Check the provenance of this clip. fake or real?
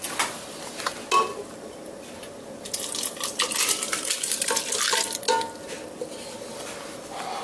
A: real